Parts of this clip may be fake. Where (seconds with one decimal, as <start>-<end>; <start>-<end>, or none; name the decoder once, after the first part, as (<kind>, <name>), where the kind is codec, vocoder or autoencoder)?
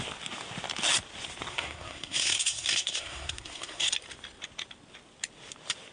1.5-3.9 (codec, SNAC)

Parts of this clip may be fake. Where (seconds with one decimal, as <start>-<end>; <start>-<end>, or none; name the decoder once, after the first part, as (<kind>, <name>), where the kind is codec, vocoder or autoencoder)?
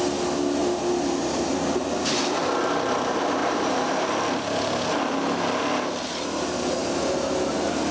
0.6-1.2 (vocoder, BigVGAN v2); 3.4-4.0